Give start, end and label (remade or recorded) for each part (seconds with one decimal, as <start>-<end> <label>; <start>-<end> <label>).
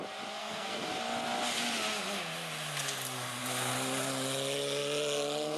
0.0-0.4 recorded; 0.4-0.9 remade; 0.9-5.6 recorded